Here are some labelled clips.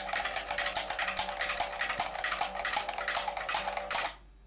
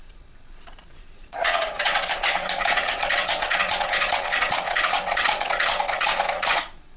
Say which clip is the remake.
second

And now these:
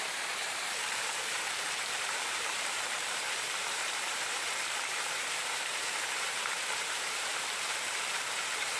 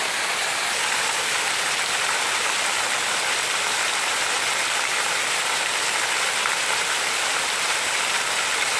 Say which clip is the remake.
first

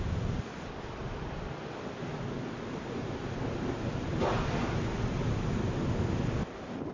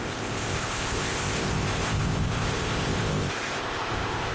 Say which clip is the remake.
second